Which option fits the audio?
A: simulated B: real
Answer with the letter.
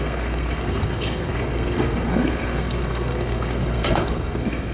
A